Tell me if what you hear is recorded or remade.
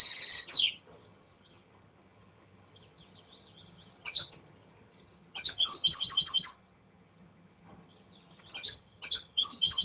remade